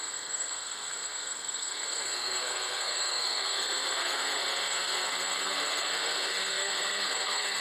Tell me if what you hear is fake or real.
fake